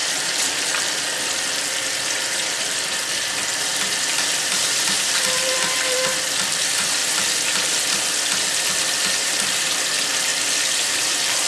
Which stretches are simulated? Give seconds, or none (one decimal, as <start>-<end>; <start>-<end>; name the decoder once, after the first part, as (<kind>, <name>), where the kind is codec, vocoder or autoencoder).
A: 0.0-10.3 (vocoder, BigVGAN v2); 10.9-11.5